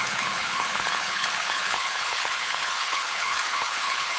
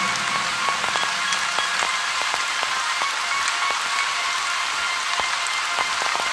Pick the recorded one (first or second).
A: second